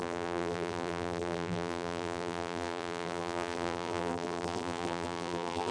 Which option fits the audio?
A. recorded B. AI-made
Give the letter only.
B